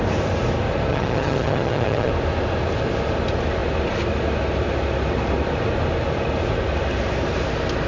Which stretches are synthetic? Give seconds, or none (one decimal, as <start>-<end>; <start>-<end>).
0.9-2.1